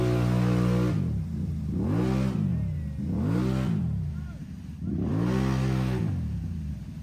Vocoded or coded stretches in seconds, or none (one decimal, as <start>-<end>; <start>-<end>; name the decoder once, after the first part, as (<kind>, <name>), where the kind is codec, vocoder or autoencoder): 4.4-5.1 (vocoder, BigVGAN v2)